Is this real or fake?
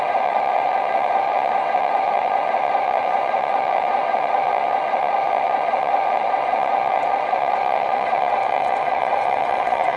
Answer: fake